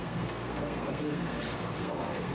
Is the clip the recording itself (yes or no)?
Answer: no